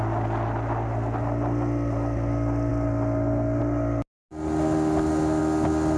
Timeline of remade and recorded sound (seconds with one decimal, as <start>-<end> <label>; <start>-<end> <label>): 0.0-6.0 recorded